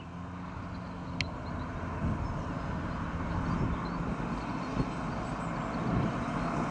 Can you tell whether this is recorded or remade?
recorded